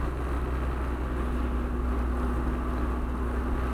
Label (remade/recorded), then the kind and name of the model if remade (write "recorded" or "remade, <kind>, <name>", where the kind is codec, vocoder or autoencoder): recorded